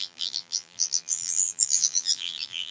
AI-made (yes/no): yes